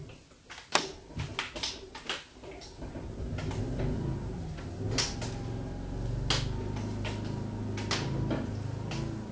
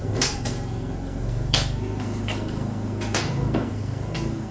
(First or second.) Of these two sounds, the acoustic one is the first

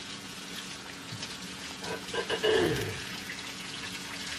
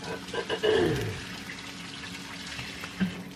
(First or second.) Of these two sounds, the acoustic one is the second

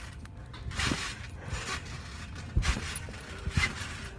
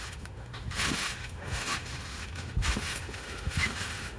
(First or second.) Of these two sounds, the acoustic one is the first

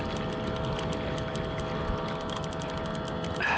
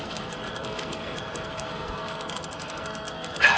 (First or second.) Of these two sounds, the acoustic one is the first